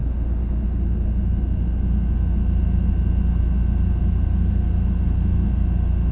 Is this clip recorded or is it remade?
recorded